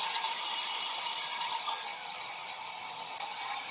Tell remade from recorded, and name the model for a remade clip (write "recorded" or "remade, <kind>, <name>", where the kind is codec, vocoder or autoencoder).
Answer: recorded